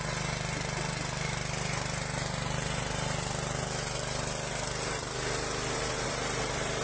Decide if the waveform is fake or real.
real